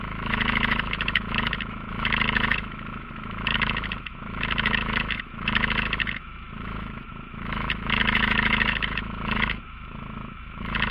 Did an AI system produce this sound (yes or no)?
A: yes